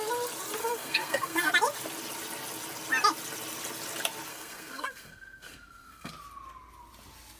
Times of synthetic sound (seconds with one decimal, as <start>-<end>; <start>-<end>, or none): 0.6-1.5; 4.3-6.1